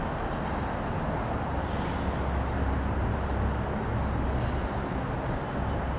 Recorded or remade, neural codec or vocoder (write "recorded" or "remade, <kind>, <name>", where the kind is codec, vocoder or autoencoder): recorded